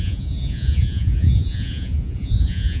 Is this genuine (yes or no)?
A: no